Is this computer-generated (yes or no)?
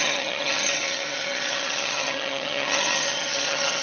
yes